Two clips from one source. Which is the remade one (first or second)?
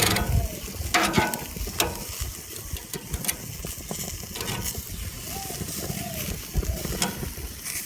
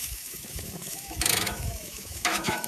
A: second